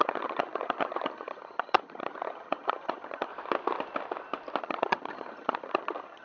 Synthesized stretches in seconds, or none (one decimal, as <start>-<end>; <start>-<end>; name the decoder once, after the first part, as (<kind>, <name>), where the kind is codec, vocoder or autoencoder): 0.0-3.3 (vocoder, HiFi-GAN); 4.6-6.2